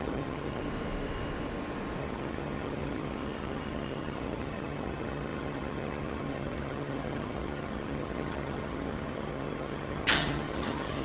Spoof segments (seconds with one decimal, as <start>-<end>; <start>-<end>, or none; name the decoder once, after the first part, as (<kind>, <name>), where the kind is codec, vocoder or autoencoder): 0.0-0.6 (vocoder, HiFi-GAN); 2.0-11.0